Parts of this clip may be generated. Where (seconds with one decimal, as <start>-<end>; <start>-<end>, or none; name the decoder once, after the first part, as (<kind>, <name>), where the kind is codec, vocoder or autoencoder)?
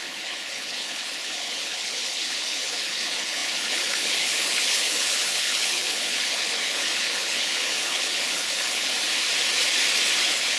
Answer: 0.0-8.9 (codec, HILCodec); 10.2-10.6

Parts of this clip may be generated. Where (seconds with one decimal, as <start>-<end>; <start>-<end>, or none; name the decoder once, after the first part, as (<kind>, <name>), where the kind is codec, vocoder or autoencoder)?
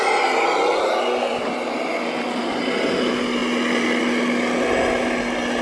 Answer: none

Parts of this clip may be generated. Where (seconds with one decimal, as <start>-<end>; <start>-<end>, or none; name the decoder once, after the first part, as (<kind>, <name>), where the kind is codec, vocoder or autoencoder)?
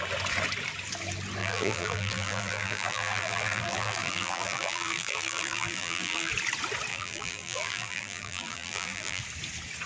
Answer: 1.4-6.3 (vocoder, BigVGAN v2); 6.9-9.2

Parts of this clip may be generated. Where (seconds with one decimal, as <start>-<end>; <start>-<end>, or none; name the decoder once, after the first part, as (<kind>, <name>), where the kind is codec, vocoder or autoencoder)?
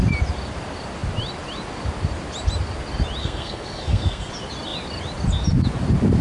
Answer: 3.2-4.3 (codec, SNAC)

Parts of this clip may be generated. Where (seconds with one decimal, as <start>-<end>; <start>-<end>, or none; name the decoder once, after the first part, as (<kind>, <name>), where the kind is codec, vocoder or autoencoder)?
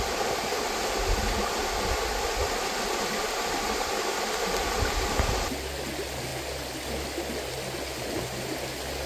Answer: none